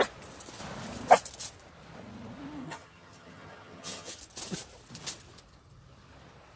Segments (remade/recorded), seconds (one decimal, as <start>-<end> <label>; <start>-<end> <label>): 0.0-2.6 recorded; 2.6-4.2 remade; 4.2-6.6 recorded